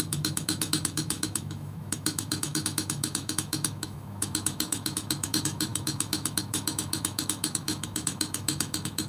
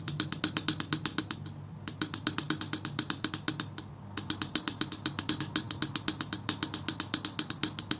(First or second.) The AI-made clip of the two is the first